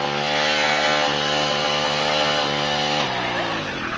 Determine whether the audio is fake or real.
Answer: real